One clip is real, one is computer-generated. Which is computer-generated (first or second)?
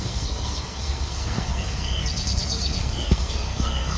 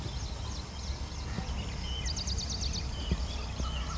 first